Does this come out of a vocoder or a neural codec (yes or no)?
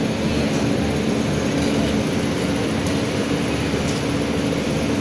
no